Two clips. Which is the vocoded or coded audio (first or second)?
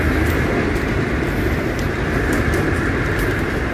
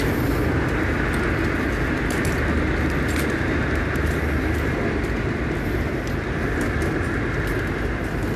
first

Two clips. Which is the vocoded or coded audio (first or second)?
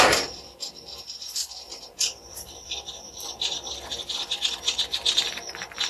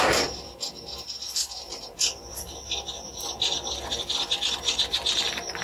first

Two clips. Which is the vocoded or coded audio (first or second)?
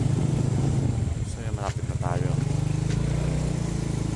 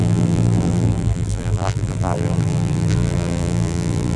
second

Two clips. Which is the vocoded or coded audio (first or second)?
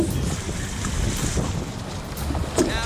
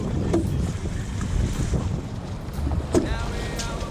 second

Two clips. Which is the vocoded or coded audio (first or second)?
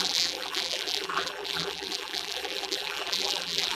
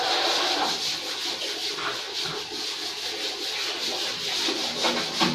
first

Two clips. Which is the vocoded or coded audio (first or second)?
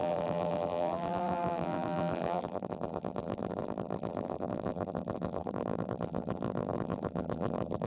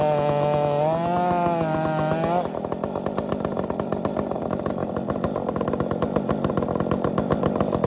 first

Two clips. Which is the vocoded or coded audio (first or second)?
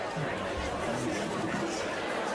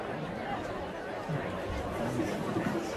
second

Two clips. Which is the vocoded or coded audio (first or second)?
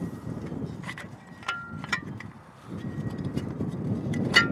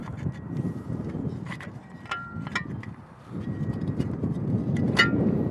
first